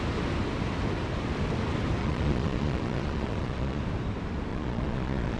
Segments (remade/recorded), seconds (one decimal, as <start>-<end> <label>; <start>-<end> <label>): 0.0-2.0 recorded; 2.0-3.8 remade; 3.8-4.5 recorded; 4.5-5.4 remade